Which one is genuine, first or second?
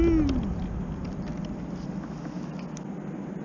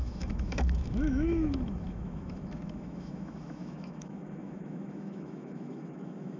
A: first